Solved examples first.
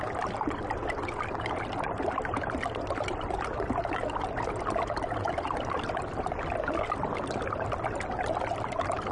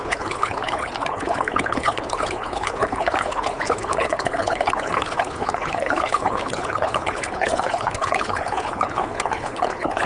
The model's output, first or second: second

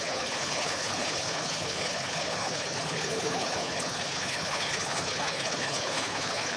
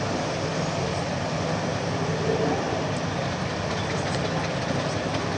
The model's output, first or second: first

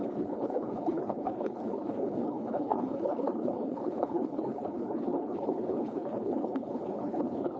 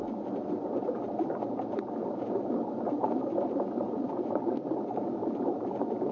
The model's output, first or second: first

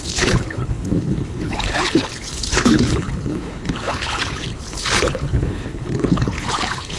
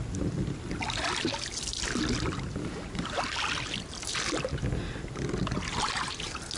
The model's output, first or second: first